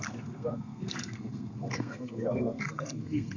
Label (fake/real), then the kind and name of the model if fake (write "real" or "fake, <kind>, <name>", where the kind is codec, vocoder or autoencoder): fake, codec, SNAC